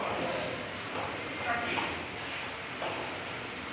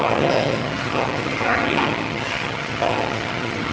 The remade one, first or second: second